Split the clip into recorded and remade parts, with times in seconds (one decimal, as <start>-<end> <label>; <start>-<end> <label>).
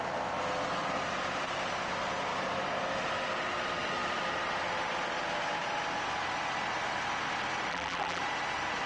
0.0-7.7 recorded; 7.7-8.2 remade; 8.2-8.9 recorded